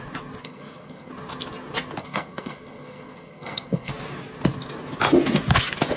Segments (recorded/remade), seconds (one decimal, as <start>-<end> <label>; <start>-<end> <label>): 0.0-0.4 recorded; 0.4-1.1 remade; 1.1-2.0 recorded; 2.0-3.9 remade; 3.9-6.0 recorded